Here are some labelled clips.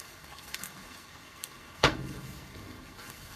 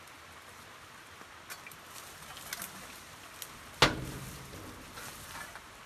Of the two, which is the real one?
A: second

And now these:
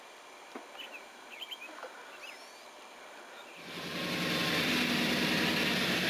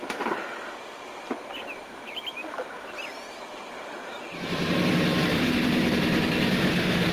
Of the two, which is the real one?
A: first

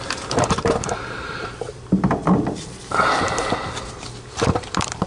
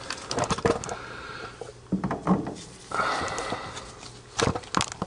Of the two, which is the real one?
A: second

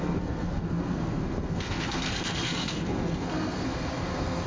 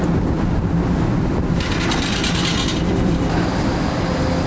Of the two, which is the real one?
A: second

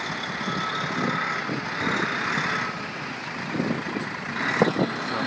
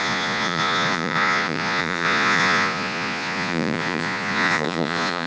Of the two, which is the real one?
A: first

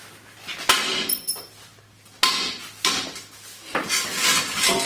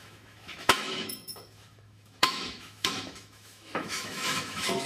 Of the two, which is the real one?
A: first